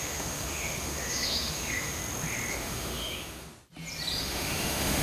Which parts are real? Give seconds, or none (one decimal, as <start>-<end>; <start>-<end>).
2.0-2.5; 3.5-4.2